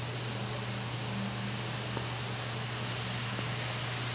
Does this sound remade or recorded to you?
recorded